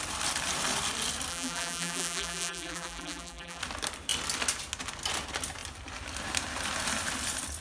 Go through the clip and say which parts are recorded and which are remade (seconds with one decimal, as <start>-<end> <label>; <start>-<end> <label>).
0.0-1.3 recorded; 1.3-3.6 remade; 3.6-7.6 recorded